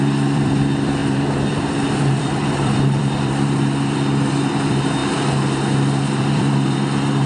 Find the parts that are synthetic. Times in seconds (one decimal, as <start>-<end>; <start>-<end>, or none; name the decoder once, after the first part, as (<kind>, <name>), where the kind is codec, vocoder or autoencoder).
0.0-5.0 (vocoder, BigVGAN v2); 6.2-7.3